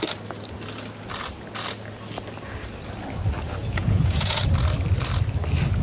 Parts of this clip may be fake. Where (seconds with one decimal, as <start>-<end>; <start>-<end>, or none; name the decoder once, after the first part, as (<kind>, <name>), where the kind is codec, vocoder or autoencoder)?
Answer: 3.6-4.4 (vocoder, Vocos)